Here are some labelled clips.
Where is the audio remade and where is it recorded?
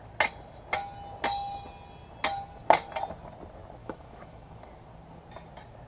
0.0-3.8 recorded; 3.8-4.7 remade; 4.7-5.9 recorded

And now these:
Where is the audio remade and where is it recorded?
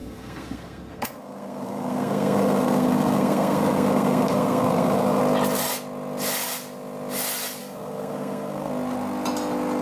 0.0-5.2 remade; 5.2-7.6 recorded; 7.6-8.7 remade; 8.7-9.8 recorded